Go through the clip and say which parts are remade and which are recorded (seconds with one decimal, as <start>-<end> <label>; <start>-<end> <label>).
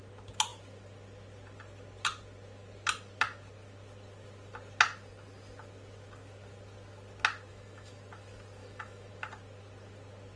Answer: 0.0-7.5 recorded; 7.5-8.0 remade; 8.0-8.6 recorded; 8.6-9.1 remade; 9.1-10.4 recorded